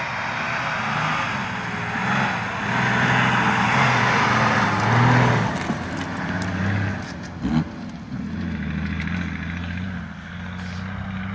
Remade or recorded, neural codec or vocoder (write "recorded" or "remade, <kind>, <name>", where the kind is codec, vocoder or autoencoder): recorded